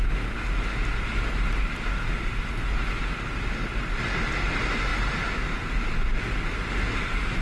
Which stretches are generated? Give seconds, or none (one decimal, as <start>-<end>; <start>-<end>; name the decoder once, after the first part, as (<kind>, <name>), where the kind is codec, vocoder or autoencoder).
none